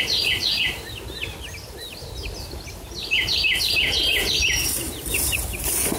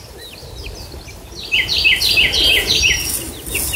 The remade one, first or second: first